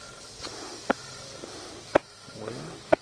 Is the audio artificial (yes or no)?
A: no